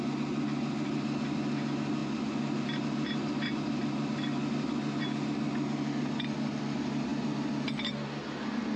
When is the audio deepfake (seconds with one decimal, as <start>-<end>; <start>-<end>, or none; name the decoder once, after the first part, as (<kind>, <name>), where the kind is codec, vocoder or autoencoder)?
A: none